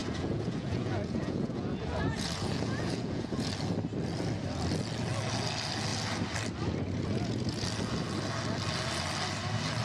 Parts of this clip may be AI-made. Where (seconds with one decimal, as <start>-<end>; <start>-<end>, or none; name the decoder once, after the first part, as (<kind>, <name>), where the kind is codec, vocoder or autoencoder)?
0.0-3.5 (vocoder, Vocos)